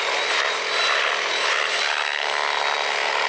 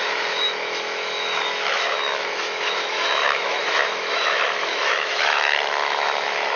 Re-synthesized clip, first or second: second